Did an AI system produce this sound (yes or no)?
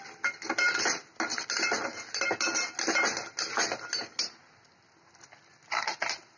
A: no